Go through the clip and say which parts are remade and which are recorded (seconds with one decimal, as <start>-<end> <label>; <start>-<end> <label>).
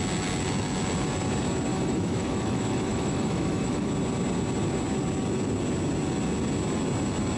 0.0-1.7 recorded; 1.7-3.9 remade; 3.9-7.4 recorded